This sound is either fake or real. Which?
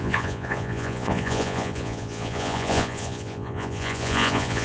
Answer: fake